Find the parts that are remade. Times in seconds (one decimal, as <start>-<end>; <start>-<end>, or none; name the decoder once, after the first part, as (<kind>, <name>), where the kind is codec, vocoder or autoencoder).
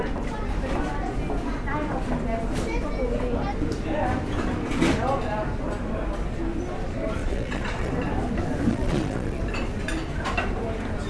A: 7.2-7.9 (vocoder, Vocos); 8.7-9.4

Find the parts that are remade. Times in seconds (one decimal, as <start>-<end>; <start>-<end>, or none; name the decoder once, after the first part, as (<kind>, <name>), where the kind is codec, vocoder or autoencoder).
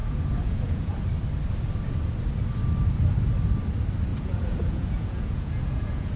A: 0.0-1.0 (vocoder, Vocos); 4.1-6.2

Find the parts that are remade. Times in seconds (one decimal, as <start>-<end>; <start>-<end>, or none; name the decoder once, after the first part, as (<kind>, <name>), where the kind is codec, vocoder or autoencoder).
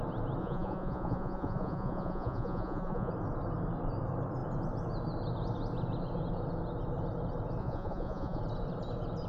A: 0.4-3.1 (vocoder, Vocos); 7.6-8.4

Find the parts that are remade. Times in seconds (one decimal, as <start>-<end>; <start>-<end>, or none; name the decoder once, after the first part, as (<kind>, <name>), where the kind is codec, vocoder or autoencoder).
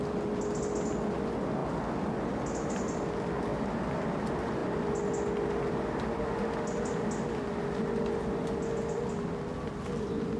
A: none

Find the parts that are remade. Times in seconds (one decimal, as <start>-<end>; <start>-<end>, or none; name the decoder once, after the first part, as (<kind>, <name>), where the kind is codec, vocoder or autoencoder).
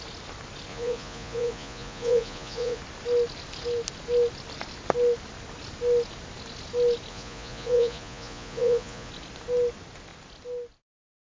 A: 0.7-2.8 (vocoder, Vocos); 7.1-9.1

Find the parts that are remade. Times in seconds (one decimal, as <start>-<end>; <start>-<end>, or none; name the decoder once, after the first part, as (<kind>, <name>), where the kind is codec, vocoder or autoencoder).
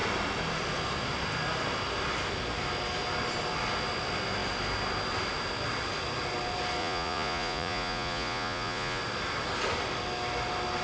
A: 6.8-9.0 (vocoder, Vocos)